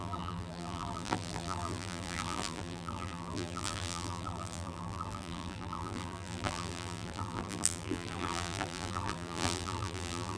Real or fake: fake